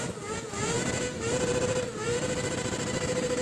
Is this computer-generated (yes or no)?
yes